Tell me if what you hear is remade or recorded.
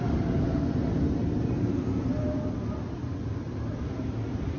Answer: recorded